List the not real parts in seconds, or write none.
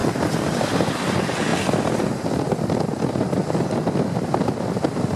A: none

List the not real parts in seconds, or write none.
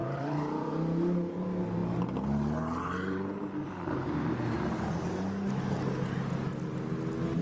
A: 0.0-0.7 (vocoder, BigVGAN v2)